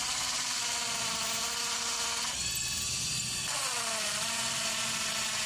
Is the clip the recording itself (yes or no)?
yes